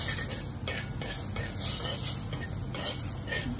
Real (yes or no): yes